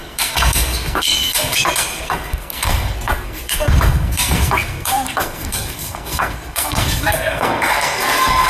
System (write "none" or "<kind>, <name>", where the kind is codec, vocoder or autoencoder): codec, SNAC